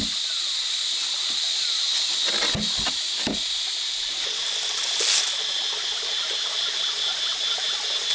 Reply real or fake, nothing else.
real